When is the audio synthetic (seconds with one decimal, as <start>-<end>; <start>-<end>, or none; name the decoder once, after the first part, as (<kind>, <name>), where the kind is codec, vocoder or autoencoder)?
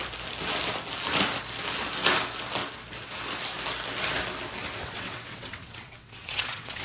4.8-6.8 (vocoder, WaveNeXt)